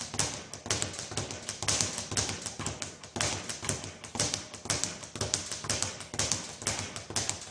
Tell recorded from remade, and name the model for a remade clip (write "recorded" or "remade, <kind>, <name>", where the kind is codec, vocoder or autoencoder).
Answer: recorded